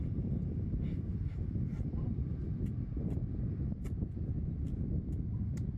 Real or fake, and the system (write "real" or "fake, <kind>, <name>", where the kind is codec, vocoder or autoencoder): real